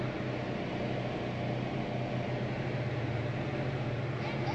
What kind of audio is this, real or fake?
real